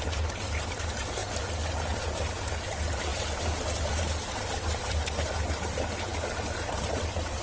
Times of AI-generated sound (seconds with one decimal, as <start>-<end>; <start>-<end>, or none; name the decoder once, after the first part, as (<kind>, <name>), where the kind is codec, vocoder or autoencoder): none